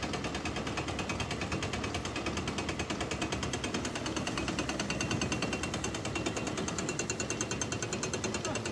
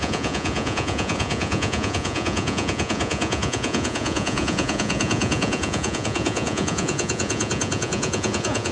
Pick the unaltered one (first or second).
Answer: first